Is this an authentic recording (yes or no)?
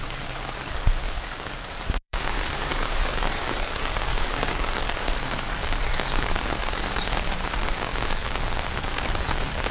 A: no